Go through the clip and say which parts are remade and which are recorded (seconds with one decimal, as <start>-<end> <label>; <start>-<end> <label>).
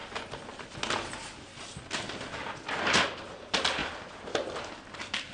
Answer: 0.0-3.8 recorded; 3.8-4.7 remade; 4.7-5.3 recorded